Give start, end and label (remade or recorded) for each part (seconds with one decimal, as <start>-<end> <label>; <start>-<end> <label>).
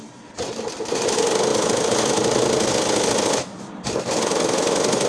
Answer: 0.0-5.1 recorded